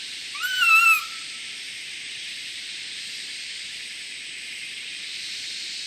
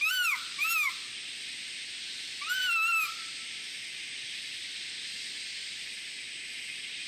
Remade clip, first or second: first